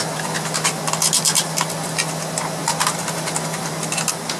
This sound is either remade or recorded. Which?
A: recorded